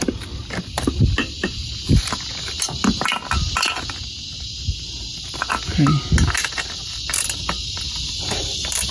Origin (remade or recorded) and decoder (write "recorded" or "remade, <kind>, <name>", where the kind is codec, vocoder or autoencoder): recorded